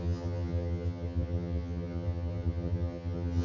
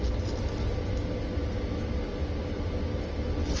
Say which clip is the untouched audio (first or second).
second